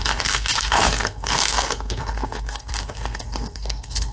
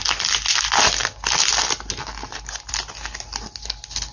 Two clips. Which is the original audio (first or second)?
second